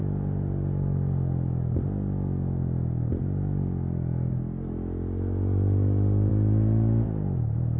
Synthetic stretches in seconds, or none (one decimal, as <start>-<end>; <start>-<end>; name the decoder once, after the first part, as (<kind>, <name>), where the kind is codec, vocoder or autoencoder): none